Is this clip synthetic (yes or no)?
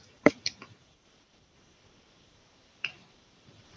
yes